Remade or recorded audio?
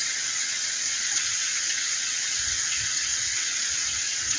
remade